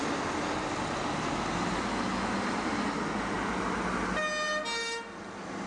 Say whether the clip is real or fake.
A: real